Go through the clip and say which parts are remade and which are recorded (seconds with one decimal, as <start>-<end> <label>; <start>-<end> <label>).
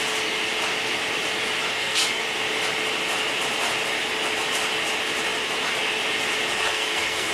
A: 0.0-1.7 recorded; 1.7-2.2 remade; 2.2-6.5 recorded; 6.5-7.3 remade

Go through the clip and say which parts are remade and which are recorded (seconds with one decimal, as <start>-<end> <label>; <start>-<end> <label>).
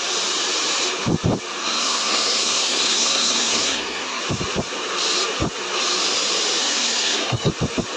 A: 0.0-1.6 recorded; 1.6-4.2 remade; 4.2-6.6 recorded; 6.6-7.5 remade; 7.5-8.0 recorded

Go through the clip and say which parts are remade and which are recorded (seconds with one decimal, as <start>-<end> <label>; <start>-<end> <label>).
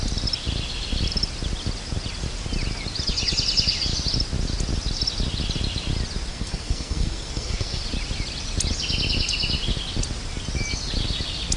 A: 0.0-6.3 recorded; 6.3-7.8 remade; 7.8-11.6 recorded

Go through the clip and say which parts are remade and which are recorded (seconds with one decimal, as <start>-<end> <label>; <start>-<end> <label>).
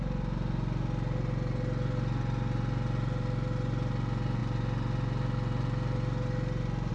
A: 0.0-6.9 recorded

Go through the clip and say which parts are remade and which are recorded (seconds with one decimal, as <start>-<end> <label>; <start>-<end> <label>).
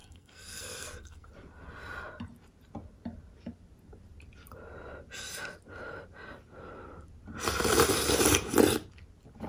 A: 0.0-1.3 remade; 1.3-9.5 recorded